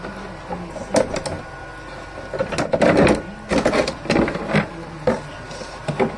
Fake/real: real